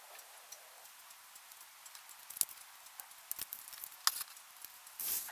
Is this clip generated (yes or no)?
no